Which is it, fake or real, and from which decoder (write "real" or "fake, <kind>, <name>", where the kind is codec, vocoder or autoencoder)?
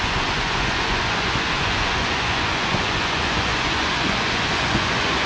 fake, vocoder, Vocos